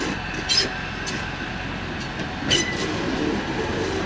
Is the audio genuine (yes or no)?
yes